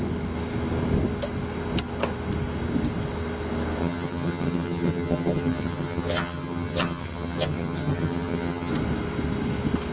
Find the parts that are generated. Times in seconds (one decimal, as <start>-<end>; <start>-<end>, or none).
3.8-8.7